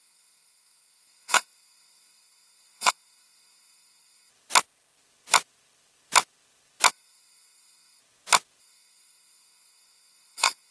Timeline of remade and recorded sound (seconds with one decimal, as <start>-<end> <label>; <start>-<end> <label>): 0.0-4.3 remade; 4.3-6.9 recorded; 6.9-8.0 remade; 8.0-8.6 recorded; 8.6-10.7 remade

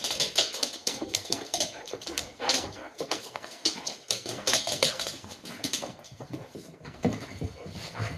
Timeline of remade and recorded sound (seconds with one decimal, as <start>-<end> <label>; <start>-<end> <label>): 0.0-8.2 remade